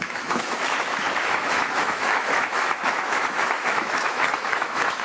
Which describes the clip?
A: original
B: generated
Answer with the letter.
B